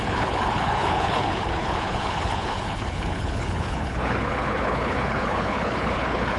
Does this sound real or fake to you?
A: fake